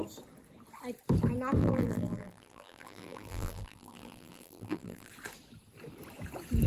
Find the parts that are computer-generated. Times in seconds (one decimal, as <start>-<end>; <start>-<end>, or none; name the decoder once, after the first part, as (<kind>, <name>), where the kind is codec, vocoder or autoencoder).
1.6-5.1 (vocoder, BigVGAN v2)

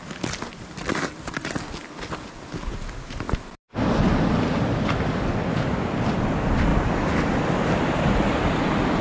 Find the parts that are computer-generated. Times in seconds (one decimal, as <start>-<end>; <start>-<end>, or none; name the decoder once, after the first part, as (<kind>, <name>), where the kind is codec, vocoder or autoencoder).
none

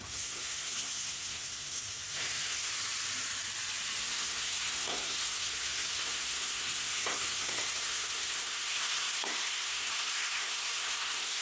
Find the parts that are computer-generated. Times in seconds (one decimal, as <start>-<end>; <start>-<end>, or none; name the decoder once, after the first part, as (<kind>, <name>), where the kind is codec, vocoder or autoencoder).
0.0-2.7 (codec, SNAC); 4.0-11.4